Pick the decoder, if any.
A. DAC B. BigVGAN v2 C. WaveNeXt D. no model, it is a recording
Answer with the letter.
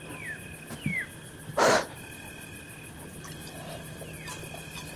D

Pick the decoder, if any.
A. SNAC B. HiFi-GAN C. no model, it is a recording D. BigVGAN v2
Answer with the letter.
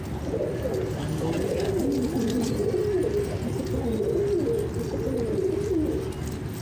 C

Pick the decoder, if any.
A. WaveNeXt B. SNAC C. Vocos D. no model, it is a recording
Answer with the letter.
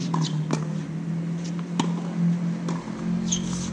D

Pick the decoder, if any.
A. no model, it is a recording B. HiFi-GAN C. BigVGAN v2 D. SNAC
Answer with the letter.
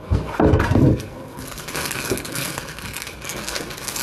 D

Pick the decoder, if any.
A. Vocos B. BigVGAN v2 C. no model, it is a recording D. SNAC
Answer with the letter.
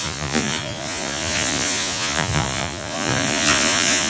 A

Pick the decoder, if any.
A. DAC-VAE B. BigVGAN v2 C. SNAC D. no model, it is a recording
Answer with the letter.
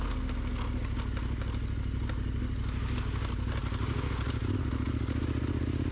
D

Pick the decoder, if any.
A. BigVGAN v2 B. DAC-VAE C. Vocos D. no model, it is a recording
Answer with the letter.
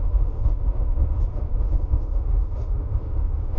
B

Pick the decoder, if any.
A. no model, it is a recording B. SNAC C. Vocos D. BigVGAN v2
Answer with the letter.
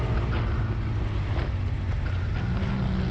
A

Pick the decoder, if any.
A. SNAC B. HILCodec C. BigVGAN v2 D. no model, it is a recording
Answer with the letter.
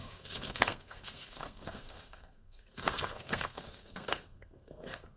A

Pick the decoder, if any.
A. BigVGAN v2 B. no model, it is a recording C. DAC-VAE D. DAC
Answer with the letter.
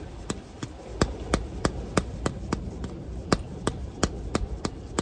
A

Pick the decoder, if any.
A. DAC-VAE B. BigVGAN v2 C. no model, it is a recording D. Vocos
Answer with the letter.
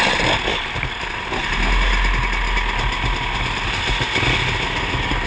C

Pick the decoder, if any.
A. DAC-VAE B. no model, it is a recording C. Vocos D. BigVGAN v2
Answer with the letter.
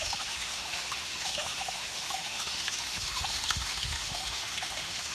A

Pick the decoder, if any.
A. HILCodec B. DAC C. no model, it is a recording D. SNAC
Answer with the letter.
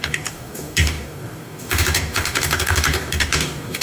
B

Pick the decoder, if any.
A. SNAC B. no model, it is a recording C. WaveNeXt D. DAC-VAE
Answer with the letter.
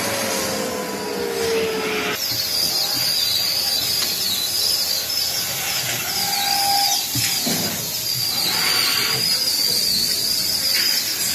B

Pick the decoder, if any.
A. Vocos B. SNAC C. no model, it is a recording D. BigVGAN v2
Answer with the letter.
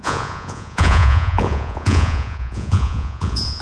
A